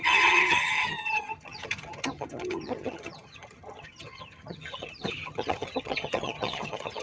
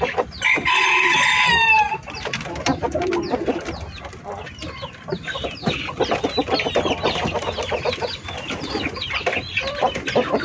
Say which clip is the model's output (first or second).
first